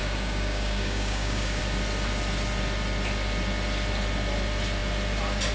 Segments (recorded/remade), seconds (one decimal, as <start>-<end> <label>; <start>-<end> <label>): 0.0-1.6 remade; 1.6-5.5 recorded